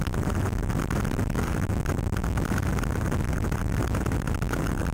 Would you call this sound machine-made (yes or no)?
yes